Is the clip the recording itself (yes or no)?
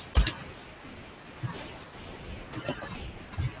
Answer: yes